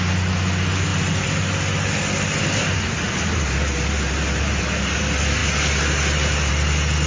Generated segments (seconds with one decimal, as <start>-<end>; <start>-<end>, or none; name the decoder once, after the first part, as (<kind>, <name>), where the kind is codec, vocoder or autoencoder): none